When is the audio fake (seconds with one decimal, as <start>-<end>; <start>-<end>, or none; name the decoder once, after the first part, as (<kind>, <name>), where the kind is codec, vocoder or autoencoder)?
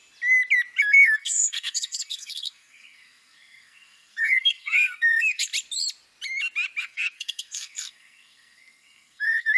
0.8-5.5 (codec, SNAC); 6.8-9.6